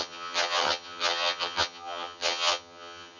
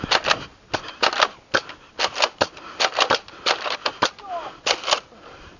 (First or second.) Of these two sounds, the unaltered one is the second